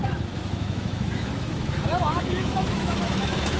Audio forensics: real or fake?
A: fake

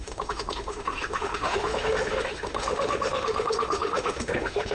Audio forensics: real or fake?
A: fake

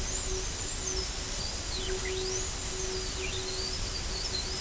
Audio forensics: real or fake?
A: real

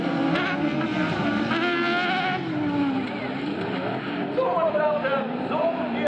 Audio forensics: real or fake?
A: real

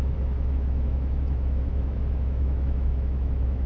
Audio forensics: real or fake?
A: fake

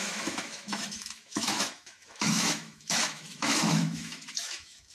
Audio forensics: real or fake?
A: fake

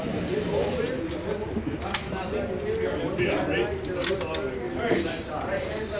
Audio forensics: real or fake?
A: real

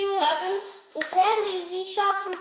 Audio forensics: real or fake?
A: fake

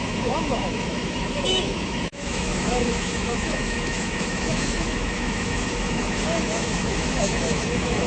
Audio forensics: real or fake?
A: fake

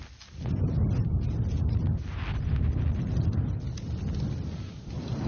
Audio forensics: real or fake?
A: real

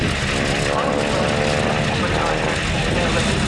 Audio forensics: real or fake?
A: real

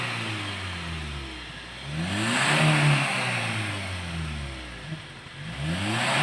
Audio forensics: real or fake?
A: real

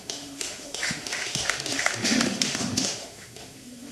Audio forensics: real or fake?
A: fake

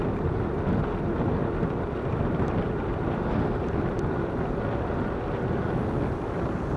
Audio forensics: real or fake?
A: real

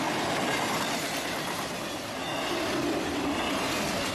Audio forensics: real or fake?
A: real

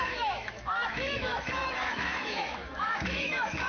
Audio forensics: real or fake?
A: fake